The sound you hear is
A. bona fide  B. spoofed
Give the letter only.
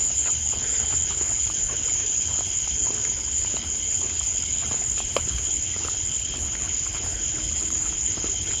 B